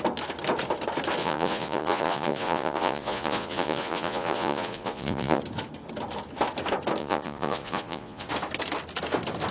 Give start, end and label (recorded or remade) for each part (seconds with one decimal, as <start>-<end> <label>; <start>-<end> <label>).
0.0-1.2 recorded; 1.2-5.4 remade; 5.4-7.0 recorded; 7.0-8.3 remade; 8.3-9.5 recorded